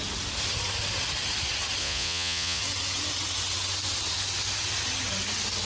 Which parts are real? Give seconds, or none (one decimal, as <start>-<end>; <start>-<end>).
0.0-1.8; 2.6-5.6